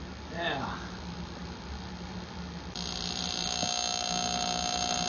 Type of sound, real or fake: real